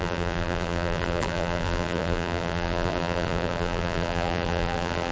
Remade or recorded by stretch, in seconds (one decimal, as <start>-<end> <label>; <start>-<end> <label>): 0.0-5.1 remade